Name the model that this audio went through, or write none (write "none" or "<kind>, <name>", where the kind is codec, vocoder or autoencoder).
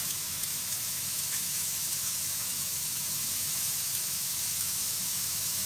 autoencoder, DAC-VAE